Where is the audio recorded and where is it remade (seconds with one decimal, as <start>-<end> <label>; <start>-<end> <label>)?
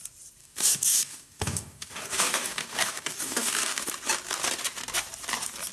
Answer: 0.0-0.4 recorded; 0.4-3.8 remade; 3.8-5.7 recorded